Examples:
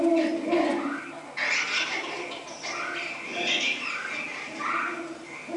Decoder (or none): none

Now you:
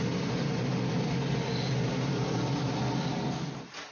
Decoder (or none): none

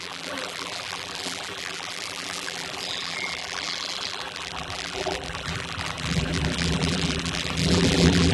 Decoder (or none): vocoder, BigVGAN v2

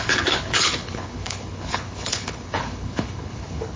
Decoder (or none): codec, HILCodec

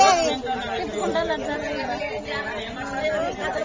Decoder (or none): none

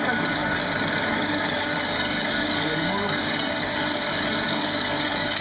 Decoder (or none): codec, DAC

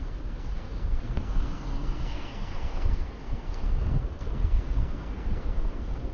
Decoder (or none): codec, SNAC